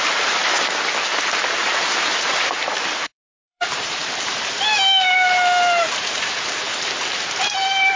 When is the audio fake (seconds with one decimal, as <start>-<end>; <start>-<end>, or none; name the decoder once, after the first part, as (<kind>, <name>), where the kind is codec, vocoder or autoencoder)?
0.0-0.4 (vocoder, BigVGAN v2); 1.0-4.0; 6.1-8.0